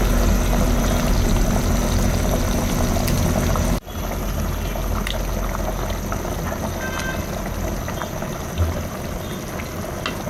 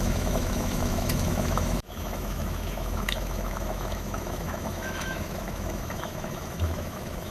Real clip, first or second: first